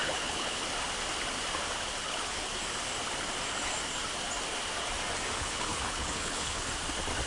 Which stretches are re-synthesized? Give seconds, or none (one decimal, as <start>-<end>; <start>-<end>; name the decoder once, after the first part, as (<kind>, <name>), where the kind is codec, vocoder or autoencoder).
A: 0.0-0.6 (codec, HILCodec); 2.0-2.5; 5.4-6.7